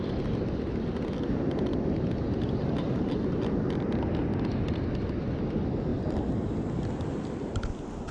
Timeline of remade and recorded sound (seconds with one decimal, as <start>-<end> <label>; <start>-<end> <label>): 0.0-8.1 recorded